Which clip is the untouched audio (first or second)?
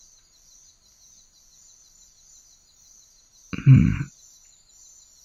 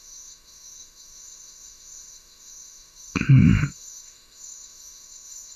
first